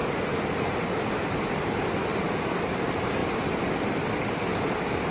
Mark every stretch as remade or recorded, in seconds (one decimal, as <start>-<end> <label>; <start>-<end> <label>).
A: 0.0-5.1 recorded